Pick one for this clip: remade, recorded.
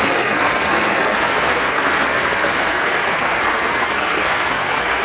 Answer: remade